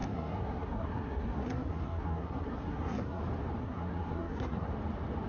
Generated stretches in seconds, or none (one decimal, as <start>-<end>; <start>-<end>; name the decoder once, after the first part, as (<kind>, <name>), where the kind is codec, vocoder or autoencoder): 0.0-3.2 (codec, SNAC); 3.6-4.7